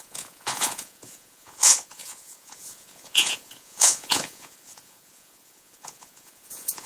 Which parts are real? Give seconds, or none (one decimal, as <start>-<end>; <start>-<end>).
none